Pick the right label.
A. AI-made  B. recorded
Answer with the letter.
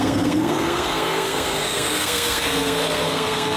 A